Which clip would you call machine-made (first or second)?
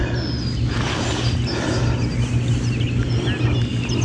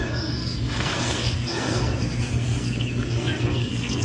second